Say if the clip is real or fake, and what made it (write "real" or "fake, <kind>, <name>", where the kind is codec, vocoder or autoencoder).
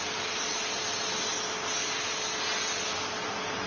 real